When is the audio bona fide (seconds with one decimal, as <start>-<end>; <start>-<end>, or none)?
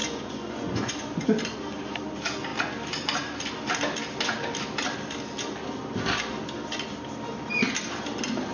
1.3-8.5